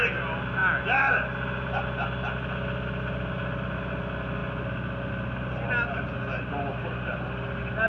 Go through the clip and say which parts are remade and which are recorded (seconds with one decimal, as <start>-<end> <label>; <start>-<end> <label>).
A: 0.0-7.9 recorded